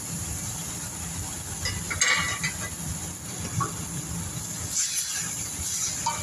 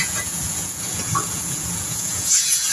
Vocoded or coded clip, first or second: second